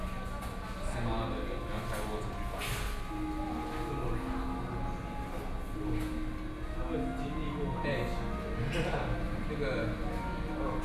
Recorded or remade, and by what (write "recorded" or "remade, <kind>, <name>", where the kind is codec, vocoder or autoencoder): recorded